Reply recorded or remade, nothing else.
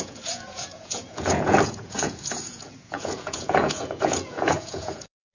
remade